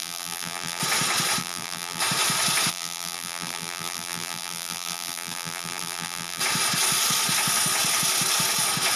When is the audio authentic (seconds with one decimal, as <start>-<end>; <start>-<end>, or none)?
0.8-1.4; 2.0-2.7; 6.4-9.0